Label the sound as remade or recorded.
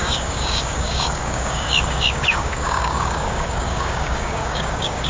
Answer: remade